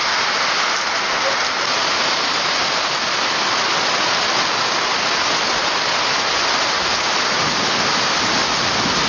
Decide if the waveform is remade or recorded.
recorded